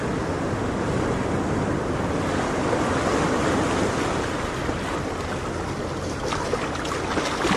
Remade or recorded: recorded